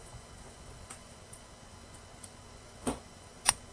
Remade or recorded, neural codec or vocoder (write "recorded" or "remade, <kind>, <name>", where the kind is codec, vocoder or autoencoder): remade, vocoder, Vocos